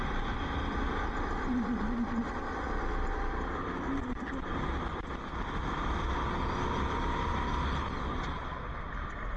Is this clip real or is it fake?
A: real